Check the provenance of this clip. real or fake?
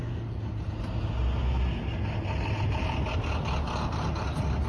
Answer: real